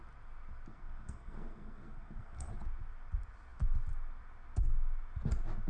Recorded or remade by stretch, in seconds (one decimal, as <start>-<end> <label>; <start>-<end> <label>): 0.0-0.7 recorded; 0.7-2.5 remade; 2.5-5.7 recorded